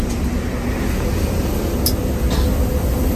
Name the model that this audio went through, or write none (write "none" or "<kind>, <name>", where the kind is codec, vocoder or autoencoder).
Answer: none